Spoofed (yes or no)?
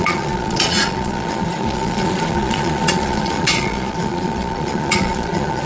yes